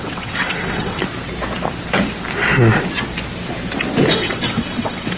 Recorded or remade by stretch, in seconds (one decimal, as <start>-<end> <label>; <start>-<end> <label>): 0.0-1.0 remade; 1.0-4.1 recorded; 4.1-5.2 remade

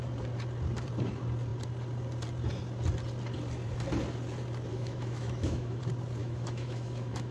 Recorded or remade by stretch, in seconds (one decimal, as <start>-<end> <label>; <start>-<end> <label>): 0.0-4.7 recorded; 4.7-5.8 remade; 5.8-6.2 recorded; 6.2-7.3 remade

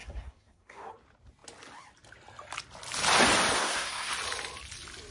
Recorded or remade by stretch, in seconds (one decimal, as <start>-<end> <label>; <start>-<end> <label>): 0.0-0.9 remade; 0.9-3.6 recorded; 3.6-4.1 remade; 4.1-5.1 recorded

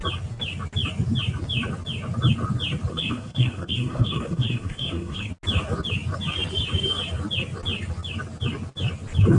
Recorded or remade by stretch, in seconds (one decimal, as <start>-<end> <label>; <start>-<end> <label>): 0.0-2.9 recorded; 2.9-5.3 remade; 5.3-9.4 recorded